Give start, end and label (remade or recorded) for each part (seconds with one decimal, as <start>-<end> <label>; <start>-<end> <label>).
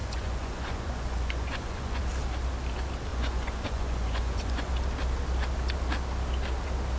0.0-2.0 remade; 2.0-3.1 recorded; 3.1-4.7 remade; 4.7-7.0 recorded